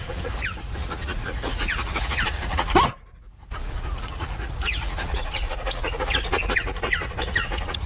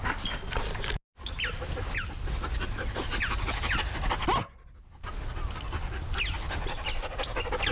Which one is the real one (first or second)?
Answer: second